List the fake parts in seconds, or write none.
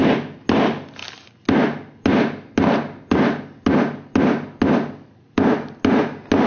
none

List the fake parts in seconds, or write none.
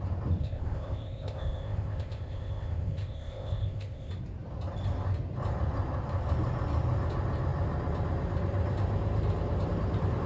0.4-4.1 (codec, ZipCodec)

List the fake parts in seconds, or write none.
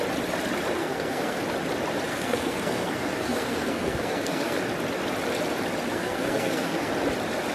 0.8-1.4 (codec, SNAC); 2.1-4.6; 5.9-6.9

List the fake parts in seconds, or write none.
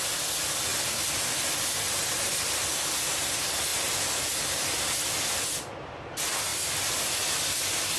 none